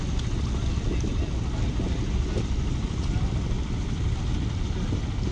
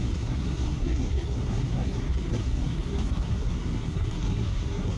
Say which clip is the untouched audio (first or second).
first